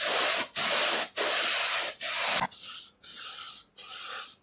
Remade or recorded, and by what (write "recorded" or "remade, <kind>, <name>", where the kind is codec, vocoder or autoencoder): recorded